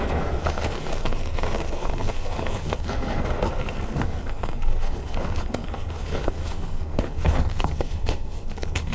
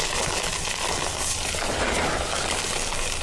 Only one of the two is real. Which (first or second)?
second